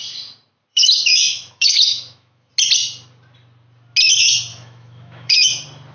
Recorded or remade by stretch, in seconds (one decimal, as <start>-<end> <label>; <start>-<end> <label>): 0.0-0.7 recorded; 0.7-2.5 remade; 2.5-4.5 recorded; 4.5-5.5 remade; 5.5-5.9 recorded